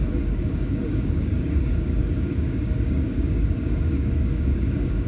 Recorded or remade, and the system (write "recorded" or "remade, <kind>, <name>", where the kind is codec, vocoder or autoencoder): remade, codec, DAC